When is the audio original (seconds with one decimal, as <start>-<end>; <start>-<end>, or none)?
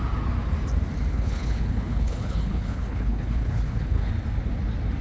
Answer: 0.0-1.1; 4.1-5.0